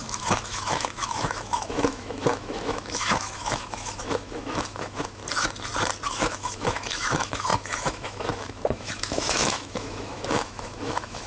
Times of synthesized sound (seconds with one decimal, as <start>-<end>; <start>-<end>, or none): 0.0-5.2; 6.1-11.3